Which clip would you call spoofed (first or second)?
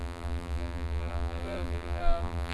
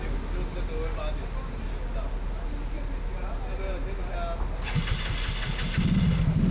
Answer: first